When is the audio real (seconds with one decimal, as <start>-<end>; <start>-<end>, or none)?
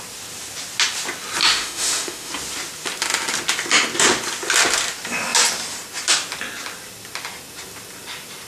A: 0.0-1.4; 2.3-8.5